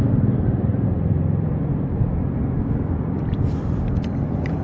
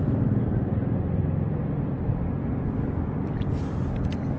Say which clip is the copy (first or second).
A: first